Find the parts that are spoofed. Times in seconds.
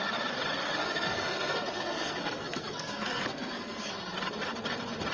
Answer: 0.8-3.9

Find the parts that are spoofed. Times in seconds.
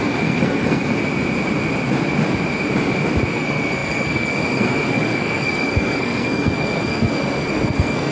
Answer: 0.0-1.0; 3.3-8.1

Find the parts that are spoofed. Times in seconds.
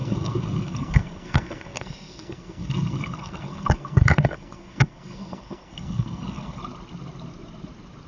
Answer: 0.0-6.6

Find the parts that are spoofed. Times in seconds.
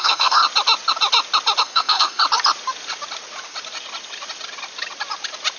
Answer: 0.0-0.4; 1.6-2.2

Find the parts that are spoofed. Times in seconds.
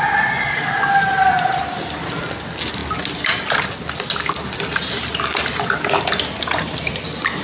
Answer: none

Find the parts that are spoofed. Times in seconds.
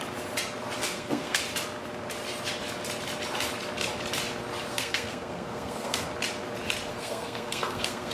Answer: 0.8-1.4; 4.7-6.1; 6.9-8.1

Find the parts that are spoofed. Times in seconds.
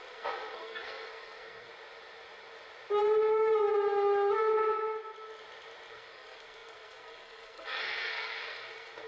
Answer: 0.0-1.7; 5.9-9.1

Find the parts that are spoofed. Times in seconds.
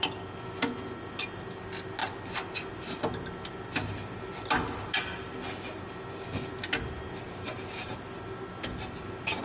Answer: none